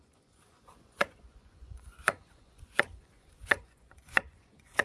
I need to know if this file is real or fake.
fake